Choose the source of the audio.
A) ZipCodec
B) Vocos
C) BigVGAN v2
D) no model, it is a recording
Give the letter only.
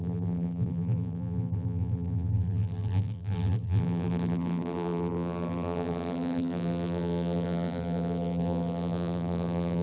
C